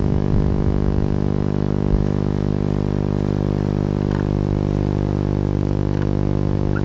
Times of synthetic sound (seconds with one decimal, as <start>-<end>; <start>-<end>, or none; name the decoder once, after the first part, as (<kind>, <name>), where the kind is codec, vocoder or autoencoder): 0.0-2.5 (autoencoder, DAC-VAE); 5.6-6.8